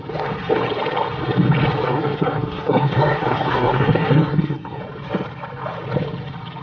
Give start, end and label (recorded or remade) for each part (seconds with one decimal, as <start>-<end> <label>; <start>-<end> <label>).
0.0-1.8 recorded; 1.8-4.8 remade; 4.8-6.6 recorded